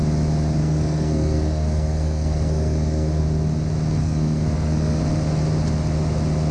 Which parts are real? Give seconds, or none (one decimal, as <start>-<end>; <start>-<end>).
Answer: 0.0-0.6; 3.2-4.0; 5.0-6.5